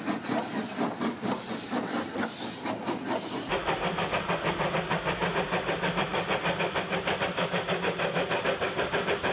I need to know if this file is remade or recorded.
recorded